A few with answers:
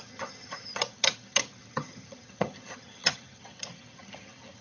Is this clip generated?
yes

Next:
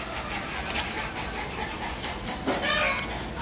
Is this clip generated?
no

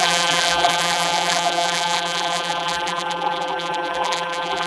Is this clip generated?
yes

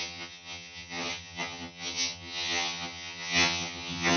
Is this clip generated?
yes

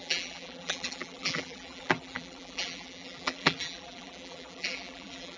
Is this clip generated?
yes